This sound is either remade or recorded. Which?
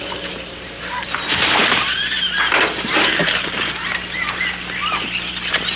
recorded